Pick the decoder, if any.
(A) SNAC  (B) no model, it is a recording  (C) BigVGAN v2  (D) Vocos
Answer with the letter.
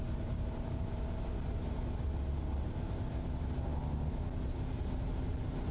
B